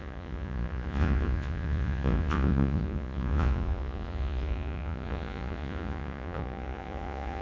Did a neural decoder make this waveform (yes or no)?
yes